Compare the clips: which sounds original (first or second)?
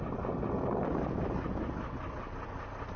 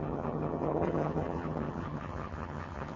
first